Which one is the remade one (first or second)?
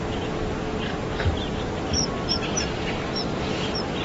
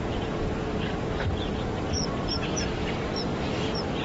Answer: second